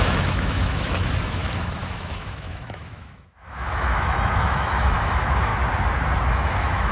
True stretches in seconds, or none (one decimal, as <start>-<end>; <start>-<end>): 5.5-6.3